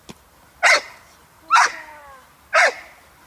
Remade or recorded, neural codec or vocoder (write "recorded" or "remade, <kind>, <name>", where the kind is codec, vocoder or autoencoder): recorded